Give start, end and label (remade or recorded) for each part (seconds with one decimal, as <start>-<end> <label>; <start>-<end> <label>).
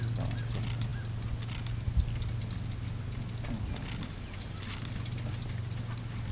0.0-6.3 recorded